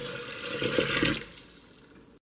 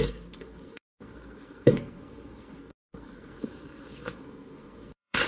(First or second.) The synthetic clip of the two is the second